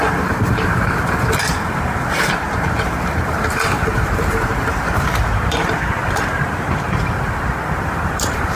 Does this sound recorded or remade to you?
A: remade